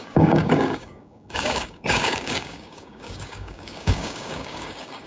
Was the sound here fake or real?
fake